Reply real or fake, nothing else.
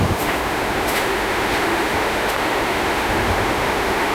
fake